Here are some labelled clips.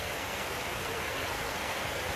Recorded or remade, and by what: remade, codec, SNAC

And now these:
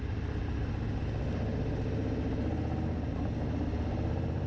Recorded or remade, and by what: recorded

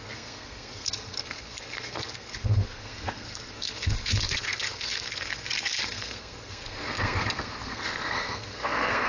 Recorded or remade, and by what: remade, codec, SNAC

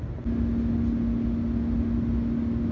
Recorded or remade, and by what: recorded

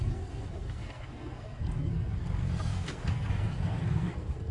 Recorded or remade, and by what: remade, codec, SNAC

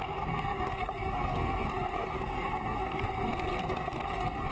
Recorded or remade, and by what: remade, codec, SNAC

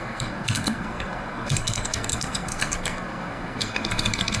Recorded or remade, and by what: remade, codec, SNAC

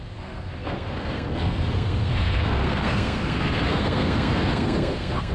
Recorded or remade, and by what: remade, codec, SNAC